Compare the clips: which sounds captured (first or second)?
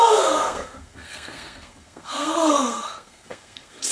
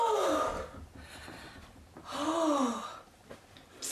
second